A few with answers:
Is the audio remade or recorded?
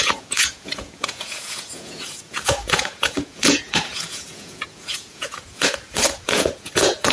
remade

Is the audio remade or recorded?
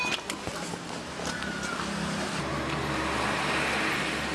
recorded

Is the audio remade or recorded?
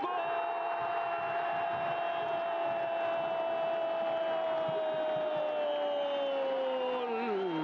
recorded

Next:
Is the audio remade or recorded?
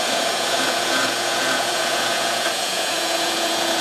remade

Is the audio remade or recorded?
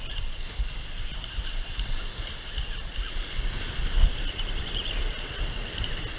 recorded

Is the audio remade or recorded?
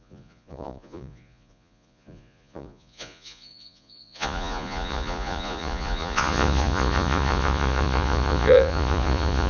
remade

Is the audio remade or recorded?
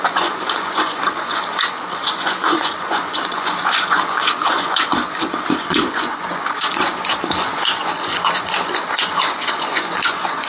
remade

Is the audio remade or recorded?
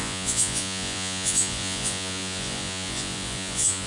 remade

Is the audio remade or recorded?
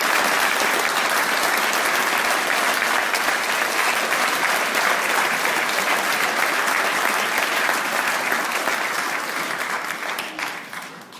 recorded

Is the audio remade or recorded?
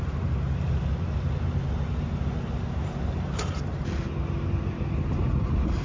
recorded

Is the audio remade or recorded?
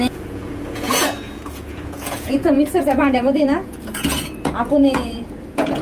remade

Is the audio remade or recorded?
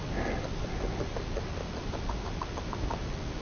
recorded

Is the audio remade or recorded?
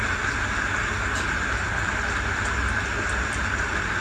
recorded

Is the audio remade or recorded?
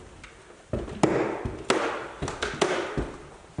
recorded